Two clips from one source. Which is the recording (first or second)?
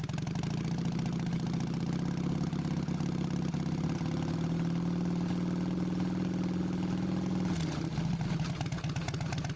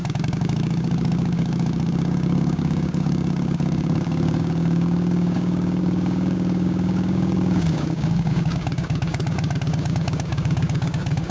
first